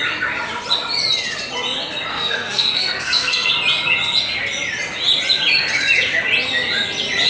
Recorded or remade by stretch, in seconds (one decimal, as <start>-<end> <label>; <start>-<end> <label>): 0.0-2.1 recorded; 2.1-3.5 remade; 3.5-7.3 recorded